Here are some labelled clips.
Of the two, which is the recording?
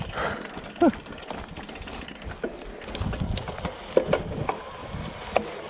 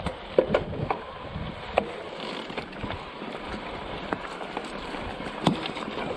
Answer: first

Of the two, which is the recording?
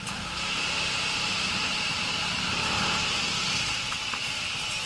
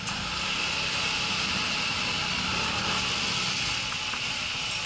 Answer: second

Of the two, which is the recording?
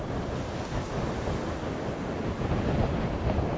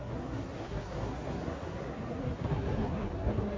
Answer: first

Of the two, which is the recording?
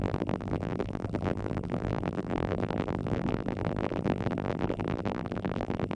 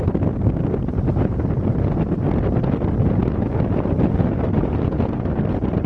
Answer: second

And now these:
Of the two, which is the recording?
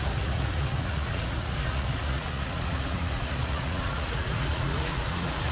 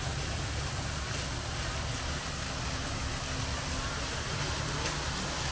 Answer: second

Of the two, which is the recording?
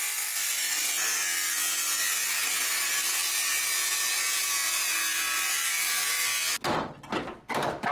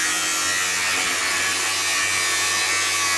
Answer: second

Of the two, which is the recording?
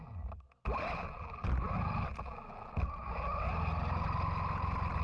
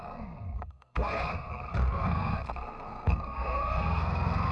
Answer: first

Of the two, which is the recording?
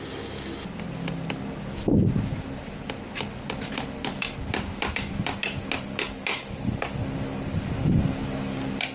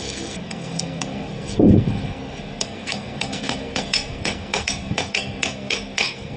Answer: first